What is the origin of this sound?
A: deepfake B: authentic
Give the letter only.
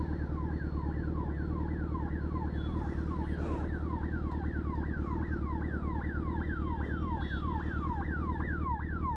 B